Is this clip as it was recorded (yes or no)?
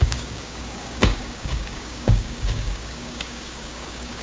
no